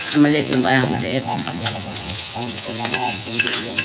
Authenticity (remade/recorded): remade